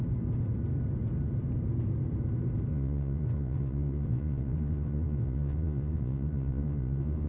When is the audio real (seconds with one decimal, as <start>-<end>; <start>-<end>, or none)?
0.0-2.7

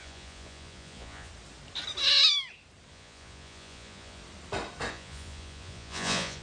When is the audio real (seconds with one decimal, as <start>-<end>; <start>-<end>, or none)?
1.3-2.9; 4.2-4.9

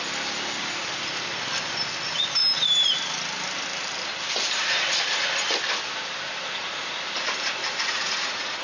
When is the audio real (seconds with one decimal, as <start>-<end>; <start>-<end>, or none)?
0.0-7.6

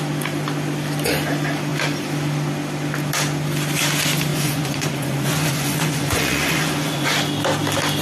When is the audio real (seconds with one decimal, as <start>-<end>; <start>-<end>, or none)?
0.0-4.3; 7.1-8.0